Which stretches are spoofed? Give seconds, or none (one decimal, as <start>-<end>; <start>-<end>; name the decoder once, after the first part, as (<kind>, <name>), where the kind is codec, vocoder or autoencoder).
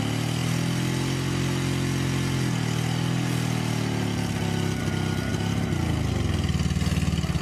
none